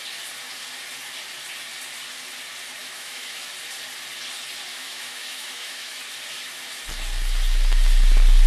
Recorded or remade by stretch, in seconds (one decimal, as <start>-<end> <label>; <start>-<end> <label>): 0.0-2.8 recorded; 2.8-3.4 remade; 3.4-4.7 recorded; 4.7-6.0 remade; 6.0-8.5 recorded